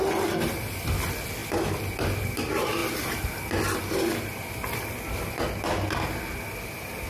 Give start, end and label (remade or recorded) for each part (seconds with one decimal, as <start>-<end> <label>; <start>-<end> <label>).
0.0-7.1 recorded